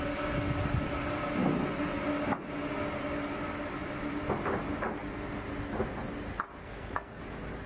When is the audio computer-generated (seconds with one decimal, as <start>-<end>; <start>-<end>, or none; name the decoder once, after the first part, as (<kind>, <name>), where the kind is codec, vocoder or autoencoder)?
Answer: 6.6-7.2 (codec, SNAC)